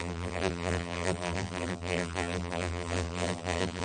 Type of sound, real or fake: fake